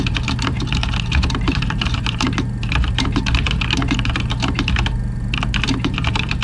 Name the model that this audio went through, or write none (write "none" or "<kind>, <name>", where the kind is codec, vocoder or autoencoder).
vocoder, BigVGAN v2